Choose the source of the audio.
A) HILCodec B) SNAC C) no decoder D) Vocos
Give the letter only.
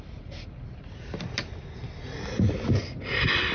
C